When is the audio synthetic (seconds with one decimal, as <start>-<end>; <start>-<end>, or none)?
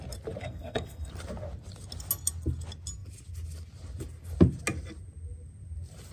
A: 0.4-1.1